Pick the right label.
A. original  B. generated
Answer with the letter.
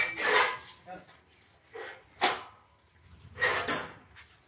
A